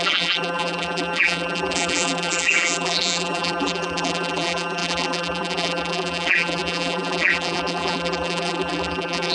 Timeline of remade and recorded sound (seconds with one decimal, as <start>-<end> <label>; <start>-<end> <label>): 0.0-9.3 remade